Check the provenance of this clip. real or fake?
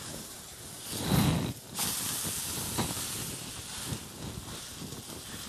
real